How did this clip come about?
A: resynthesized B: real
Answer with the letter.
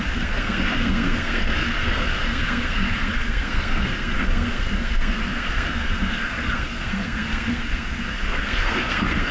A